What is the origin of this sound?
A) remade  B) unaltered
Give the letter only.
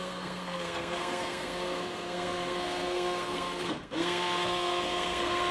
A